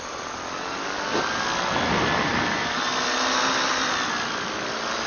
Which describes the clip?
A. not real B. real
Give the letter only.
B